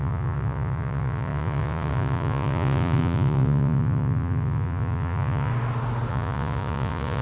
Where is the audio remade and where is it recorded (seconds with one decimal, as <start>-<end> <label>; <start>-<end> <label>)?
0.0-5.5 remade; 5.5-6.1 recorded; 6.1-7.2 remade